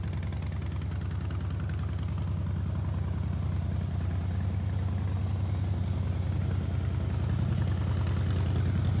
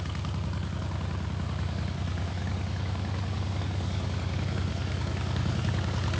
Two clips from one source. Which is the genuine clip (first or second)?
first